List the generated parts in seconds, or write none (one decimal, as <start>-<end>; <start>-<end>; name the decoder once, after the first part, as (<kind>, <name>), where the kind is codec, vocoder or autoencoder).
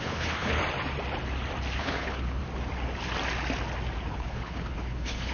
0.0-0.6 (codec, HILCodec); 1.8-2.4; 4.1-5.3